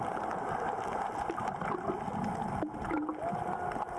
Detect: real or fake real